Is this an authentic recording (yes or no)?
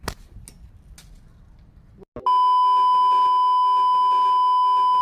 yes